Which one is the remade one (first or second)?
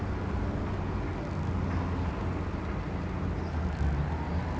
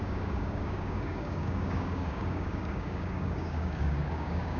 second